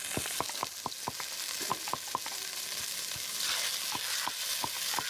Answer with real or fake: real